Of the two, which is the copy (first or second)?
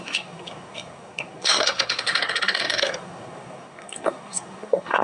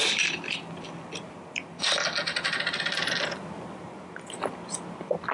first